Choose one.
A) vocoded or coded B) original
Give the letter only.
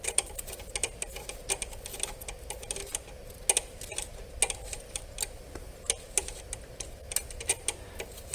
B